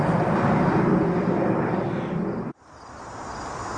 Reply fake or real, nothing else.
real